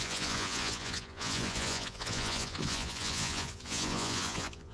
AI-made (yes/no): yes